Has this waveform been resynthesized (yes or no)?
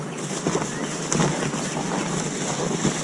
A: no